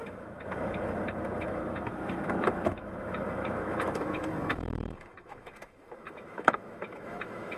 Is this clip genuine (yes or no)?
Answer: no